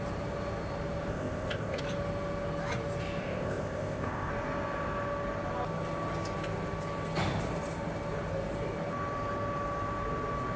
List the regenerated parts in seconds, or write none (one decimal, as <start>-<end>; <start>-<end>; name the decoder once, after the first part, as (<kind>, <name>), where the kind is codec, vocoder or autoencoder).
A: 1.1-1.8 (codec, ZipCodec); 3.2-4.3